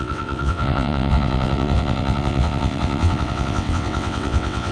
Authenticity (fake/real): fake